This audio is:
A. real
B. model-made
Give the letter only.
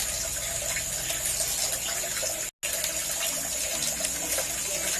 A